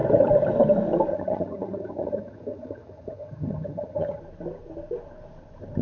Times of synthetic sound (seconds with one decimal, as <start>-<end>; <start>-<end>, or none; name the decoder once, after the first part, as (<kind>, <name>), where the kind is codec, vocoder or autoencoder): 1.1-4.2 (vocoder, HiFi-GAN)